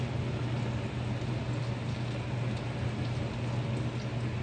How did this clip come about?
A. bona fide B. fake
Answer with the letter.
A